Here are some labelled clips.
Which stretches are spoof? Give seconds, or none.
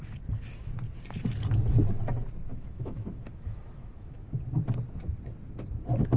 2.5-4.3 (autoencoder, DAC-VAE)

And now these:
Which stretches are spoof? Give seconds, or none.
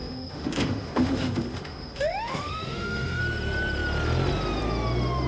0.0-3.2 (autoencoder, DAC-VAE)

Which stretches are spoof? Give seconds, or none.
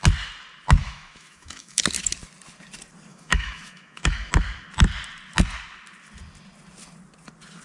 0.8-1.8 (autoencoder, DAC-VAE); 3.1-4.3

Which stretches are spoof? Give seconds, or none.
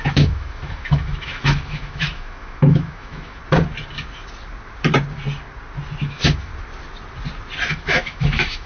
0.0-3.4 (autoencoder, DAC-VAE); 6.0-6.5; 7.7-8.7